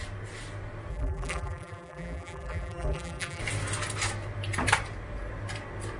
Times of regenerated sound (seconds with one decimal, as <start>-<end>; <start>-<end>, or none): 0.9-3.4